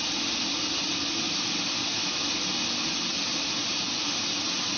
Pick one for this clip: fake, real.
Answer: real